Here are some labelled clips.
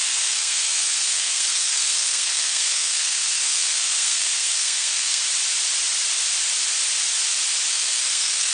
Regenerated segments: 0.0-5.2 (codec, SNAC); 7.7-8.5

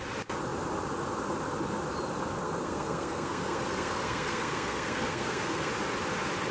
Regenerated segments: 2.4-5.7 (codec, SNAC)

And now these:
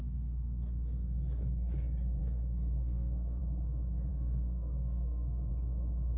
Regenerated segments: 2.2-3.4 (codec, SNAC); 4.1-5.5

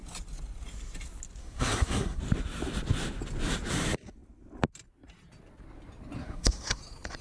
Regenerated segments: 1.4-2.2 (codec, SNAC); 6.2-6.8

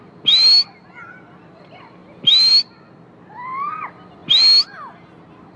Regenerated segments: none